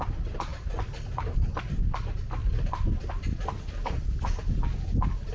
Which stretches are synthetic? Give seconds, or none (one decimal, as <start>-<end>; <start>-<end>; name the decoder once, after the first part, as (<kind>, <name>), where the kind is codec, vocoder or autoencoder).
none